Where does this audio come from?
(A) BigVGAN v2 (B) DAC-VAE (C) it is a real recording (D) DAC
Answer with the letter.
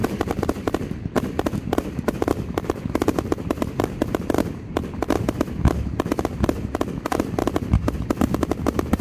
C